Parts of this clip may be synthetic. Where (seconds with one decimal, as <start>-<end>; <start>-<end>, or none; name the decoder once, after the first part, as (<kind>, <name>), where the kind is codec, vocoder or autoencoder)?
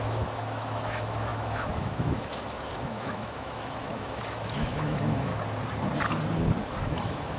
0.0-5.3 (autoencoder, DAC-VAE); 6.8-7.4